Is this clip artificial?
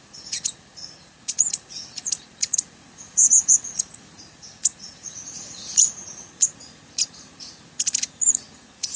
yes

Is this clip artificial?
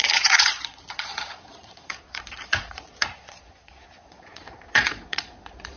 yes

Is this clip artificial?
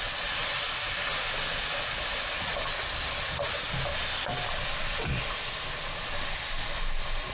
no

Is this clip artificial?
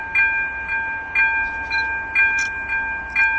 no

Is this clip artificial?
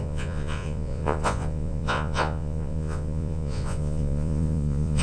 yes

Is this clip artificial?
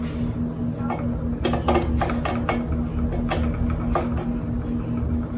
no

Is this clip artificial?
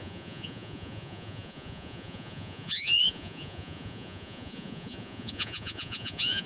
yes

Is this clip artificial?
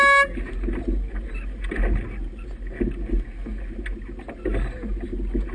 no